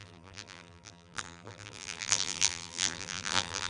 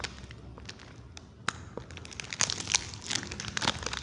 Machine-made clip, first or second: first